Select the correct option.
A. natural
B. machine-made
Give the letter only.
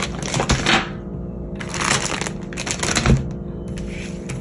A